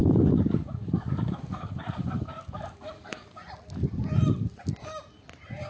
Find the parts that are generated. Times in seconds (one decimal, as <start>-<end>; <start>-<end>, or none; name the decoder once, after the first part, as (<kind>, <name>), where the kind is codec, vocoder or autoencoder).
0.0-3.4 (codec, DAC)